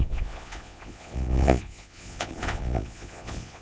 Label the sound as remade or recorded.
remade